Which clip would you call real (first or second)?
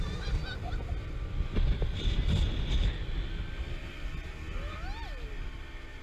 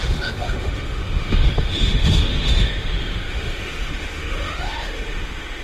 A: first